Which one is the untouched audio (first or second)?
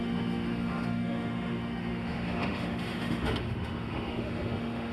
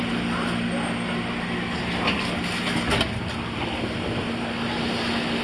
second